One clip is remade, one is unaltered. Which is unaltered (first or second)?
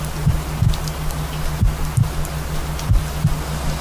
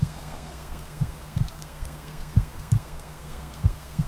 first